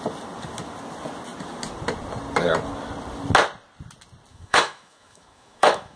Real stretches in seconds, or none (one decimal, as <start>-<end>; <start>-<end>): 0.0-4.3